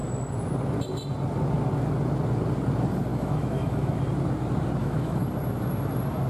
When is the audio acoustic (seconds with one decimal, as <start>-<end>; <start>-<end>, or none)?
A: 0.0-3.1; 4.0-4.8; 5.3-6.3